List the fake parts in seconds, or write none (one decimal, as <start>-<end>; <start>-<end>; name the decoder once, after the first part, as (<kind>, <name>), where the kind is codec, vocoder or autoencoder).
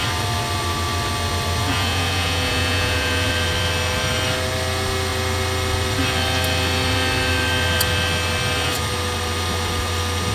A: 1.6-3.3 (vocoder, Vocos)